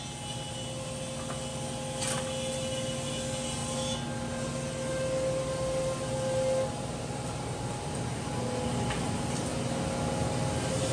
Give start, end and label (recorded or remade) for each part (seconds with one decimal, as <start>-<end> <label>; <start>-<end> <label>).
0.0-10.9 recorded